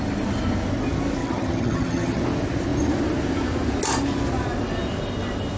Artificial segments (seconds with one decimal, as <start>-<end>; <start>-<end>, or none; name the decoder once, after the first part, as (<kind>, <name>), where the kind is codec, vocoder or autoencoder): 1.2-2.2 (vocoder, HiFi-GAN)